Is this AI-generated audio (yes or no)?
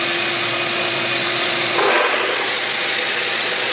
yes